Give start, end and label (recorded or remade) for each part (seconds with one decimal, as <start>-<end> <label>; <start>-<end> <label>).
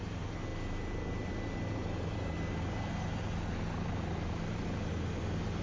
0.0-5.6 recorded